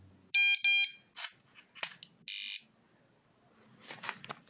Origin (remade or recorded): recorded